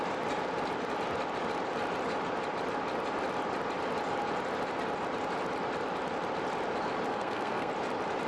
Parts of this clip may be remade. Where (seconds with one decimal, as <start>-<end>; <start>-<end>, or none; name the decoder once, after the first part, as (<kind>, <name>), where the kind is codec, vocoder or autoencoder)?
7.1-7.7 (codec, SNAC)

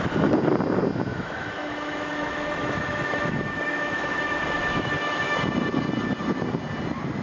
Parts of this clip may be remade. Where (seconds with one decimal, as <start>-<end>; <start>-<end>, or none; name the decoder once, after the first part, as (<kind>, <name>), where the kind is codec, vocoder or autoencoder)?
1.1-5.4 (autoencoder, DAC-VAE)

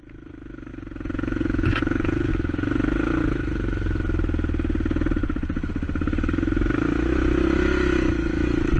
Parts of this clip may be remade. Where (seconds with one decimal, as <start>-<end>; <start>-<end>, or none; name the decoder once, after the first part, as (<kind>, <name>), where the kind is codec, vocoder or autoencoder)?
0.7-2.3 (vocoder, Vocos); 5.2-5.7